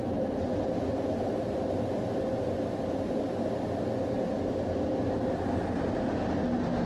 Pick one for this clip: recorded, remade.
recorded